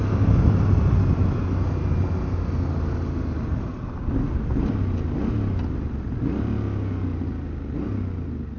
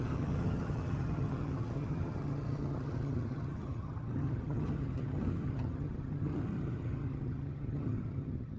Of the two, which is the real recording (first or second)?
first